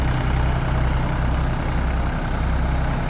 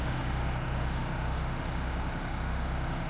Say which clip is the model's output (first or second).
second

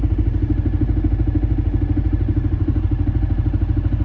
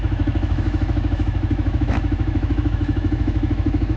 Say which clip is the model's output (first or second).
second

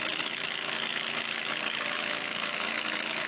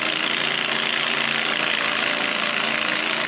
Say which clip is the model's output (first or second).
first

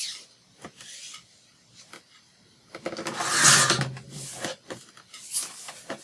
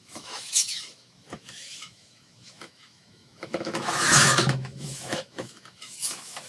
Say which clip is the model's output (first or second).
second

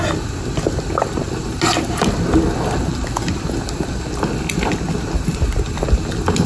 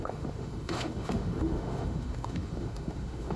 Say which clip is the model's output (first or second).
second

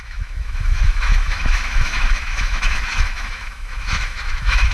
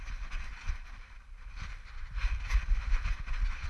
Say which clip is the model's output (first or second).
first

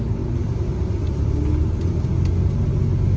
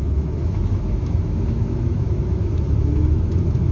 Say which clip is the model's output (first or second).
second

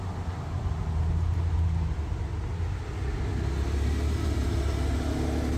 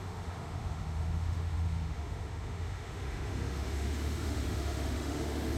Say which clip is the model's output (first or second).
second